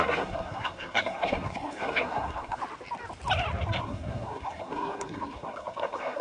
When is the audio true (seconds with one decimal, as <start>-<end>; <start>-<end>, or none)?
2.6-3.8